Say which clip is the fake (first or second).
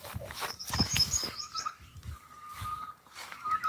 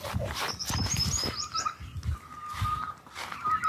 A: first